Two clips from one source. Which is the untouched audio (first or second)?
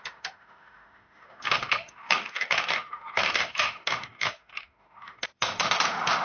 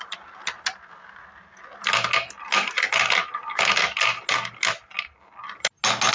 second